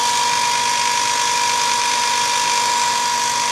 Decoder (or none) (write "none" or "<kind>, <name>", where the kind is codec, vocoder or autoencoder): none